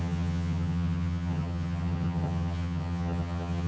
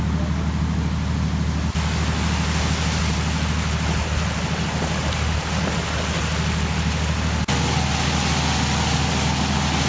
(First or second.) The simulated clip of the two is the first